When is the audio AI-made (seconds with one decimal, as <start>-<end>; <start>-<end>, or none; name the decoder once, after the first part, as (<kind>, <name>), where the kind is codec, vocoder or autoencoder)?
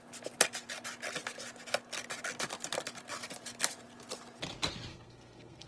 4.9-5.7 (codec, SNAC)